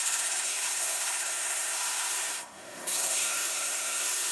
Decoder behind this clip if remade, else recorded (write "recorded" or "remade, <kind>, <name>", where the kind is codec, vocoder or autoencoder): remade, codec, SNAC